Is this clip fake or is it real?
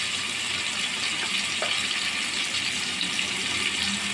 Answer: real